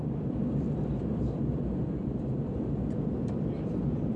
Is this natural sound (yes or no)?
no